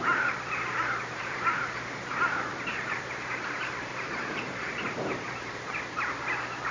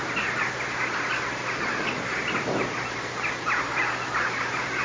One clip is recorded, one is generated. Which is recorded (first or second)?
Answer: second